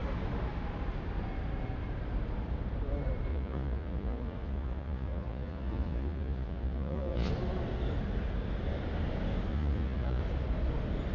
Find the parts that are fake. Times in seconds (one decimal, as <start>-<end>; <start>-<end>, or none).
3.3-7.3; 9.5-10.2